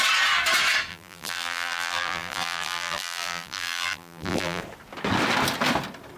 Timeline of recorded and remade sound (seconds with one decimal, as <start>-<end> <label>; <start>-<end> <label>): 0.0-0.9 recorded; 0.9-4.6 remade; 4.6-6.2 recorded